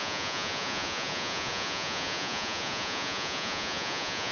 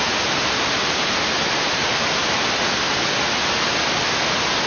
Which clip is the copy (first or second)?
first